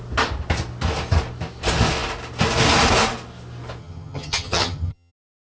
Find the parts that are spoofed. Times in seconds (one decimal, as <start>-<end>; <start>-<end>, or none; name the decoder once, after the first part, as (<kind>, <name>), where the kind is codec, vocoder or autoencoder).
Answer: 3.8-5.1 (vocoder, HiFi-GAN)